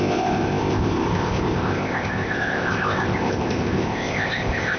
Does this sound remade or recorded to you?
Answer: remade